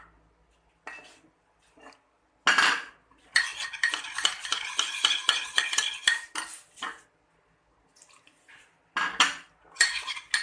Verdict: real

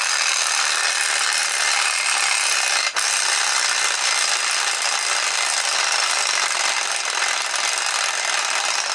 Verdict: real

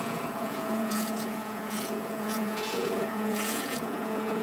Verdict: fake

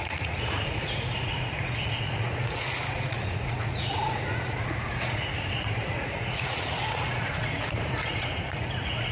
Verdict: fake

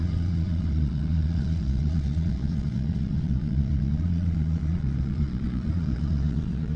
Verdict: fake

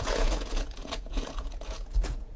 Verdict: fake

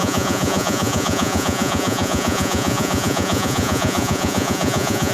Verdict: fake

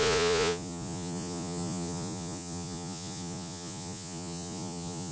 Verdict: fake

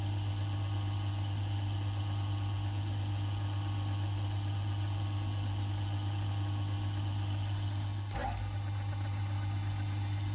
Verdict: real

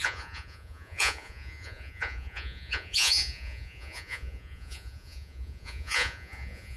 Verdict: fake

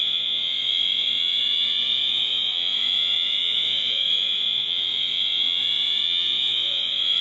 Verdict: fake